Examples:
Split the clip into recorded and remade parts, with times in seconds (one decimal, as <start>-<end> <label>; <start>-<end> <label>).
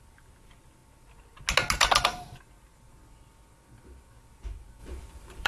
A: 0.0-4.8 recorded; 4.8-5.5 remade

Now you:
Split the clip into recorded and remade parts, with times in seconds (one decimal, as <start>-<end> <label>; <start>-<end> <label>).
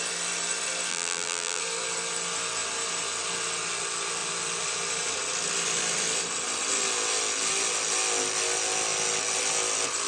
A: 0.0-0.9 recorded; 0.9-1.6 remade; 1.6-10.1 recorded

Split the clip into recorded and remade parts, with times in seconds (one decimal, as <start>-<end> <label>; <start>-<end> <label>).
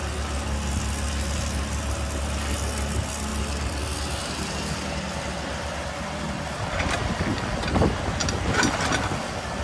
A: 0.0-8.2 recorded; 8.2-9.6 remade